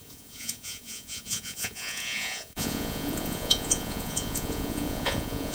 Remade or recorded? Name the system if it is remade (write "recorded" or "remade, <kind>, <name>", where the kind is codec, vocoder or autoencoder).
remade, vocoder, Vocos